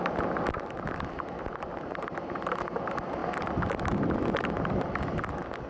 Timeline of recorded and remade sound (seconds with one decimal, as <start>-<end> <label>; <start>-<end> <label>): 0.0-5.7 recorded